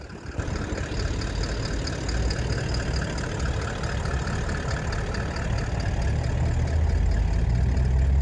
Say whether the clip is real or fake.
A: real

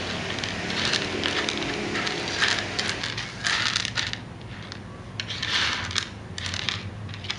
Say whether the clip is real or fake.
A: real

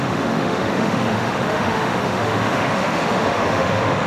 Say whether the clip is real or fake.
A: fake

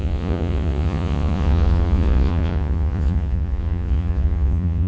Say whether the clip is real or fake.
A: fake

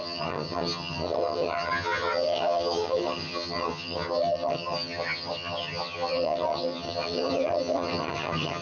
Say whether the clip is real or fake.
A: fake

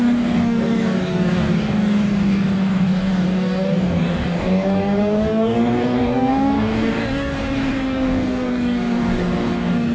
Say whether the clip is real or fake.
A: fake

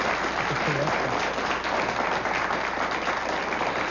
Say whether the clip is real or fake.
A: real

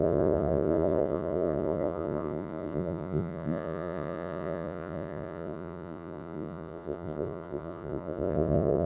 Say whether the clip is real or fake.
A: fake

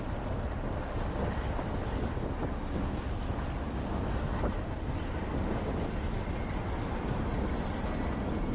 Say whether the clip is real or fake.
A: real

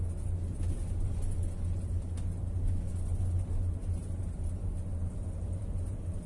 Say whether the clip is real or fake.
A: real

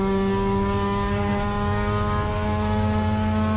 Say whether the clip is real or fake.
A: fake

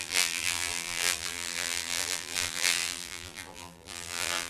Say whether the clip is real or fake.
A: fake